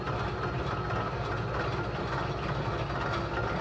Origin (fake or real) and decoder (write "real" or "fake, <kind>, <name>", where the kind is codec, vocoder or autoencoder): real